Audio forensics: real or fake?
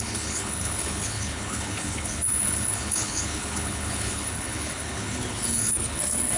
fake